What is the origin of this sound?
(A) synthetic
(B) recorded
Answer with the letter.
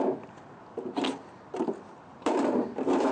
B